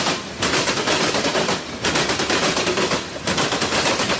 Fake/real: real